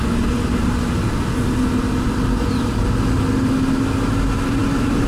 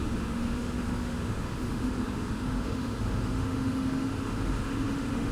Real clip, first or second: first